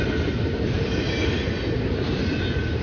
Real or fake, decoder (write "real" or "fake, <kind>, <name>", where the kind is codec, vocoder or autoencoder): real